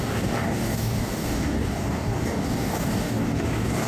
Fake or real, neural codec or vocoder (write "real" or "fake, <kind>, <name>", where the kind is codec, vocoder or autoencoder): fake, codec, DAC